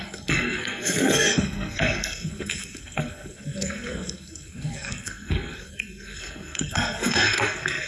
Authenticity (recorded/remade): remade